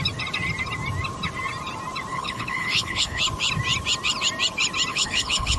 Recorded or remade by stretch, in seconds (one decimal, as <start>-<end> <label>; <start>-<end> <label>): 0.0-2.1 recorded; 2.1-3.2 remade; 3.2-4.9 recorded; 4.9-5.6 remade